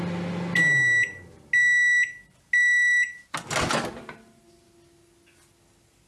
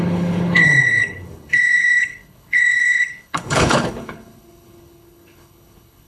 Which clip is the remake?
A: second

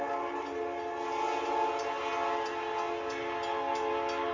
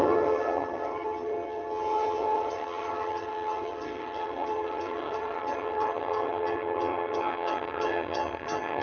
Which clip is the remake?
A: second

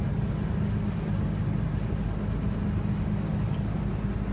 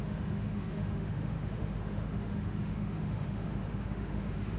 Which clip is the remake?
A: second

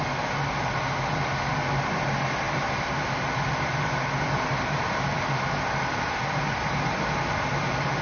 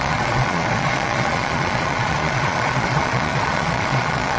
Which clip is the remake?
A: second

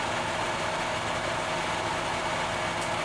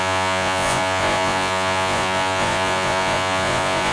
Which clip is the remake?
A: second